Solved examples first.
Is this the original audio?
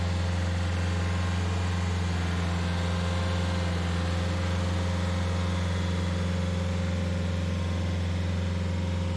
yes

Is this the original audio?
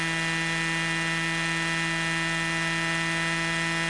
yes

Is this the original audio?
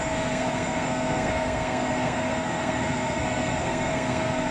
no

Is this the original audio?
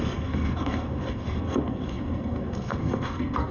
no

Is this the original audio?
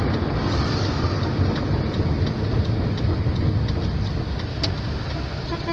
yes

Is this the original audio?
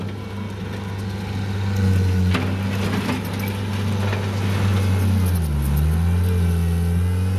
yes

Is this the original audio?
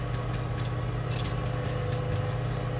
yes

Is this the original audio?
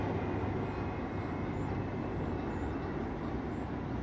yes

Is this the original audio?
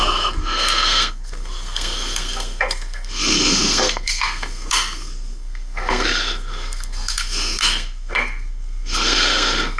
no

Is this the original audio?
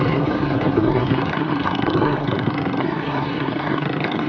no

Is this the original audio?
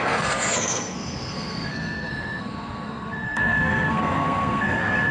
no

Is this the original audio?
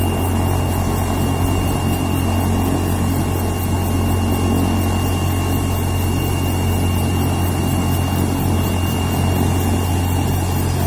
yes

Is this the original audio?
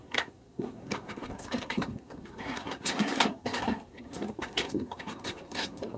no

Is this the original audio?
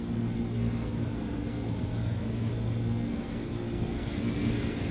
no